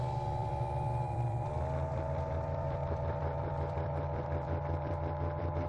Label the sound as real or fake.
fake